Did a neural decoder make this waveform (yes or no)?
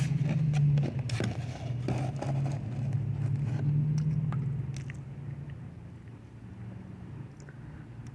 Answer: no